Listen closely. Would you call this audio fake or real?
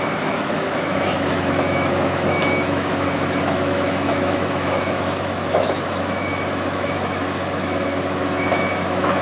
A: fake